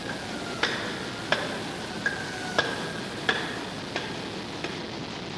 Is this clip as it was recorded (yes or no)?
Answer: yes